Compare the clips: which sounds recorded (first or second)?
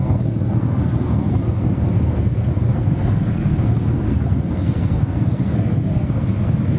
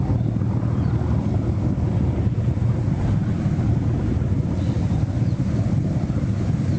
second